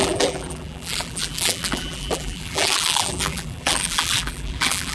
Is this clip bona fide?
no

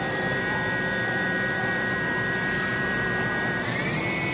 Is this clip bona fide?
no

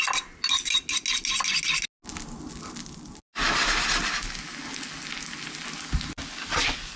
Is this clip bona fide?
yes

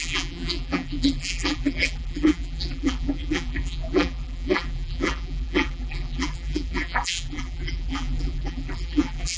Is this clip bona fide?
no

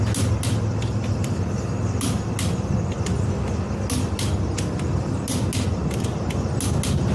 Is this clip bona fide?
yes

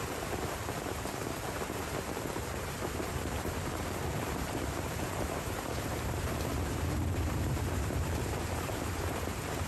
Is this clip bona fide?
no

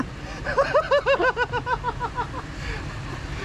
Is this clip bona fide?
yes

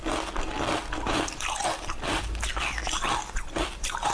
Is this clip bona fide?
yes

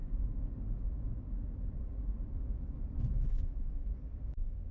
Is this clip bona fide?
yes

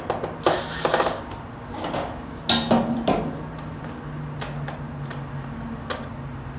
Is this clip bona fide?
yes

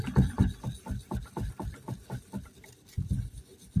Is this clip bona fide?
yes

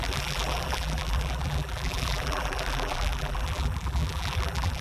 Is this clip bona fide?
no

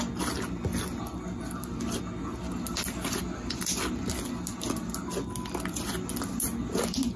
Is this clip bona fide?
yes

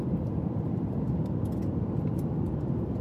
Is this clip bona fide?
yes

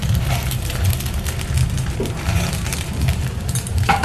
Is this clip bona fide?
no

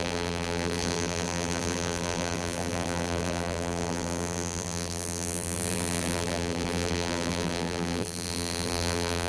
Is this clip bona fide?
no